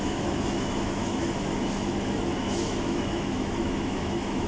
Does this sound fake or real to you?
fake